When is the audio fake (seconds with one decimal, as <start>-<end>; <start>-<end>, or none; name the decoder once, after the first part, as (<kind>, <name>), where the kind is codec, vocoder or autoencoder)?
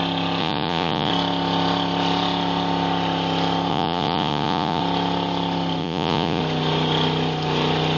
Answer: 0.4-1.1 (vocoder, Vocos); 3.7-4.8; 5.8-6.4